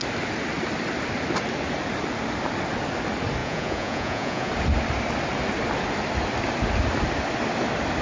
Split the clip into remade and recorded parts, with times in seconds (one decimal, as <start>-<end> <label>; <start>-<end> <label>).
0.0-3.4 recorded; 3.4-4.5 remade; 4.5-8.0 recorded